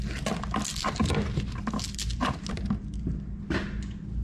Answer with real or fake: real